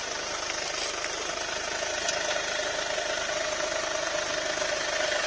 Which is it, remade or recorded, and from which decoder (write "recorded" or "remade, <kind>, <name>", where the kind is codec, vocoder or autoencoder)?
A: recorded